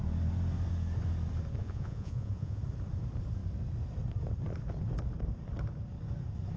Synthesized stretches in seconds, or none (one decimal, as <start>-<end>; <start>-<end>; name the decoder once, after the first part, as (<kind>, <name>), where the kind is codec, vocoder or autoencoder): 1.6-2.6 (vocoder, Vocos)